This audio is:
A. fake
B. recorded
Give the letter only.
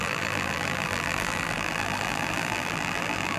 A